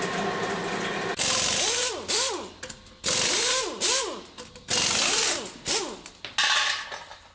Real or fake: real